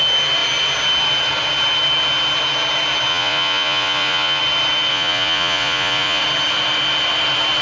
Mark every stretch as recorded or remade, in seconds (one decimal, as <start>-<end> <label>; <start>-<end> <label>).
0.0-3.1 recorded; 3.1-4.4 remade; 4.4-4.9 recorded; 4.9-6.2 remade; 6.2-7.6 recorded